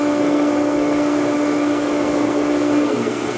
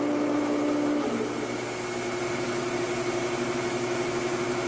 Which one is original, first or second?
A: second